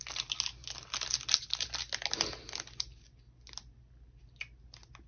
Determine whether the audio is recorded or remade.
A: recorded